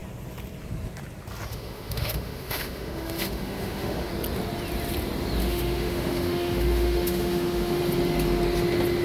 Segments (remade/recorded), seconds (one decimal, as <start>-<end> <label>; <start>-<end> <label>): 0.0-1.5 recorded; 1.5-4.1 remade; 4.1-5.4 recorded; 5.4-7.8 remade; 7.8-9.0 recorded